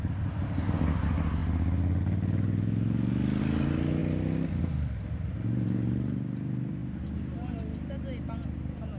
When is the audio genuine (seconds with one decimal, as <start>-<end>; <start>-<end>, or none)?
0.0-9.0